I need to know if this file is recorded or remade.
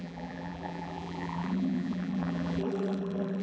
remade